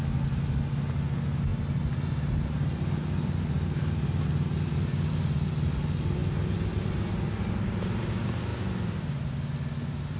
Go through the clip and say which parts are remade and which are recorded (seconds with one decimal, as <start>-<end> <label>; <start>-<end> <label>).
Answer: 0.0-10.2 recorded